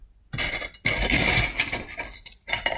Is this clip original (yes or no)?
yes